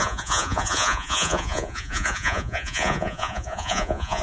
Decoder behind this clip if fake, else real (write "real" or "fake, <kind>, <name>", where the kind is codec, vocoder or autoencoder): fake, vocoder, Vocos